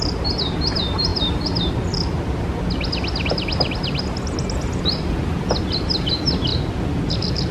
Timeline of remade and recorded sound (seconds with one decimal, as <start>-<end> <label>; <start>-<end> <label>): 0.0-7.5 recorded